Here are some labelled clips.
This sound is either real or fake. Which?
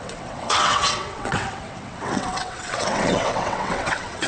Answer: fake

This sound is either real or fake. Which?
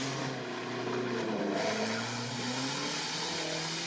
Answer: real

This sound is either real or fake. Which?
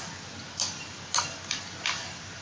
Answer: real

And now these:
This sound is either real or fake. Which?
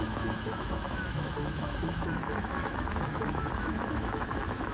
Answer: fake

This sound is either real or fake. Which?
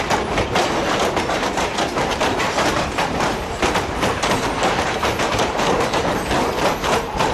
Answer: fake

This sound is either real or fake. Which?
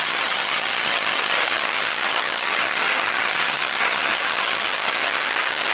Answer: fake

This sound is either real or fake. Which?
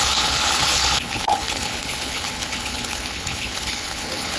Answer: fake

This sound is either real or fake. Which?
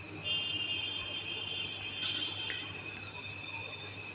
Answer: real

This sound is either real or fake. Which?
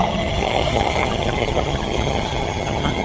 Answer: fake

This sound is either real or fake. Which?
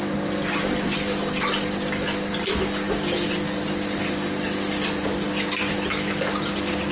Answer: real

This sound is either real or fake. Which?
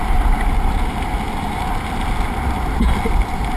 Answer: real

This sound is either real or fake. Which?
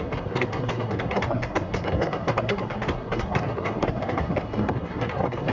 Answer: fake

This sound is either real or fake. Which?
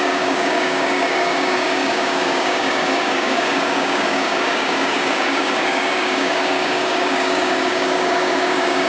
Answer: fake